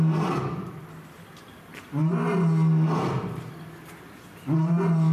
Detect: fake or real real